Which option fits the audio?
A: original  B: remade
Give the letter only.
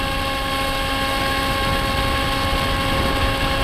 A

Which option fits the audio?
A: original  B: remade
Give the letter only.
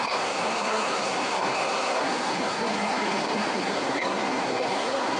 B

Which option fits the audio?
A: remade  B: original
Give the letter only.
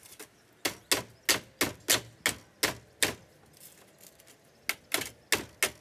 B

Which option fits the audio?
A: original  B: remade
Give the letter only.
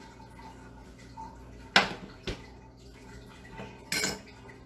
A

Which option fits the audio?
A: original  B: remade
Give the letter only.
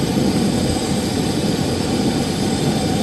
A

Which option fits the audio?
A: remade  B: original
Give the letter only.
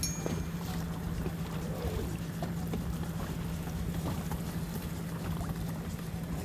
B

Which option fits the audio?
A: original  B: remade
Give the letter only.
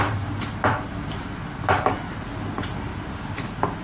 A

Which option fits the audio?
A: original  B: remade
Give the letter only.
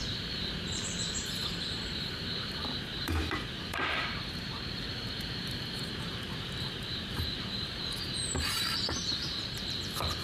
B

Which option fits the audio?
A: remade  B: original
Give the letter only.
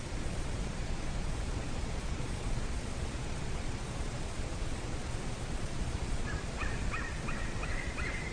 A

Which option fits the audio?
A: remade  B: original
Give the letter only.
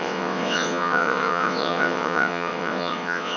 A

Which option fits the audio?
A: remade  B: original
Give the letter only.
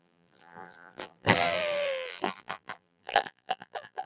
A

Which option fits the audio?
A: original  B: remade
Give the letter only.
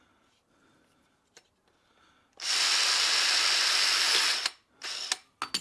A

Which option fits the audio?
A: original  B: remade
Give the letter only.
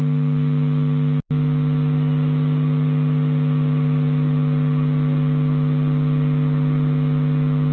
A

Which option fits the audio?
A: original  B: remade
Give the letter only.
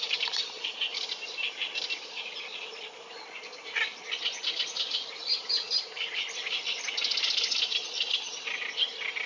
B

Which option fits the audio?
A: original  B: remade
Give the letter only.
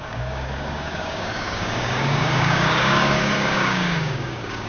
B